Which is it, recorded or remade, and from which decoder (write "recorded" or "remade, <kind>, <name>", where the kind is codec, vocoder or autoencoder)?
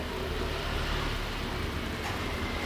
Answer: recorded